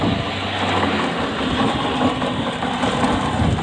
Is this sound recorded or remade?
recorded